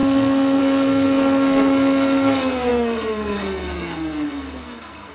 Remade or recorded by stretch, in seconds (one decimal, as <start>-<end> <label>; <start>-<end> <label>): 0.0-5.1 remade